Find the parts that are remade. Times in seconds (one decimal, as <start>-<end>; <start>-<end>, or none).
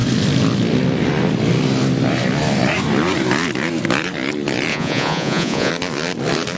4.7-5.7